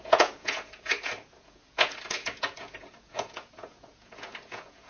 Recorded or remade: remade